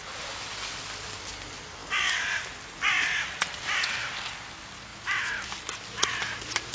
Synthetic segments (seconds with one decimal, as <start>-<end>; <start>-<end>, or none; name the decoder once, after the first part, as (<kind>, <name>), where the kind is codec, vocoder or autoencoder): none